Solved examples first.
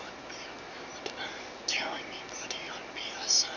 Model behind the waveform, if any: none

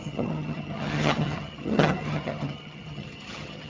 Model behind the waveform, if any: vocoder, HiFi-GAN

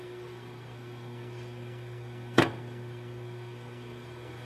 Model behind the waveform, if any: codec, SNAC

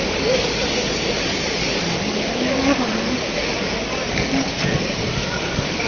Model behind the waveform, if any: codec, DAC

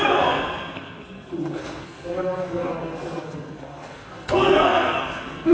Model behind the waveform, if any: codec, SNAC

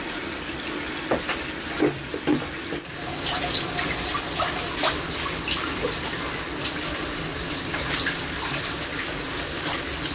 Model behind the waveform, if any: none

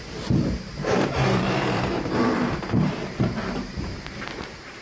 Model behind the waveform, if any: vocoder, BigVGAN v2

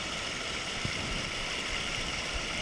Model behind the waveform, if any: none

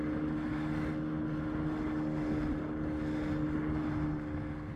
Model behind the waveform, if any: none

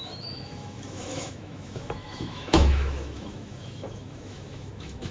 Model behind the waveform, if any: autoencoder, DAC-VAE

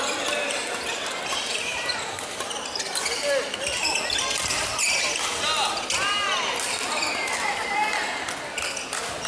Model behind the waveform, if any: none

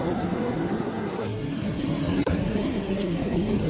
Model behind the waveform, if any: codec, SNAC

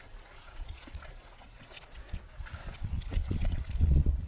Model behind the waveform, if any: vocoder, Vocos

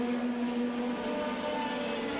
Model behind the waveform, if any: none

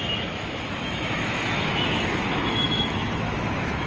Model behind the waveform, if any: autoencoder, DAC-VAE